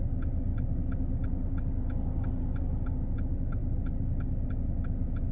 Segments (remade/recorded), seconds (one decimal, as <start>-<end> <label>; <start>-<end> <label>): 0.0-5.3 recorded